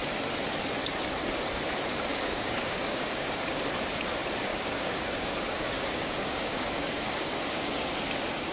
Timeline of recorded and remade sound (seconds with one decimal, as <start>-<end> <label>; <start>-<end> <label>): 0.0-2.1 recorded; 2.1-3.6 remade; 3.6-4.5 recorded; 4.5-7.9 remade; 7.9-8.5 recorded